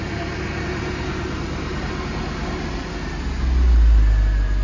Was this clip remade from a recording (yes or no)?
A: no